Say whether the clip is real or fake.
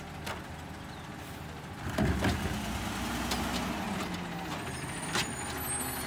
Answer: real